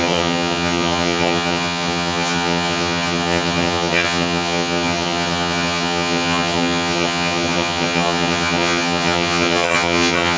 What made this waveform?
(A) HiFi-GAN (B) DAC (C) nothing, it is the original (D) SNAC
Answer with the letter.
A